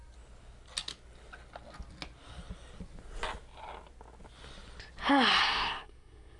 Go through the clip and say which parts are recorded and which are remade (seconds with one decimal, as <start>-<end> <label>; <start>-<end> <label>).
0.0-5.4 recorded; 5.4-6.4 remade